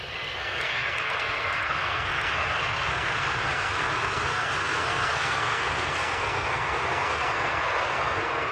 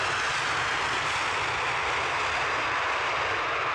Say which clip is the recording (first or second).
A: second